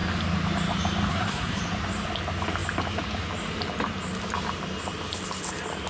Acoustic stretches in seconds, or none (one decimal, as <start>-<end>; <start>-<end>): 0.0-1.1; 1.6-5.9